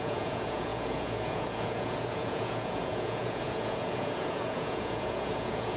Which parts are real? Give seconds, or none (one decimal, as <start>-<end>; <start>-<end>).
none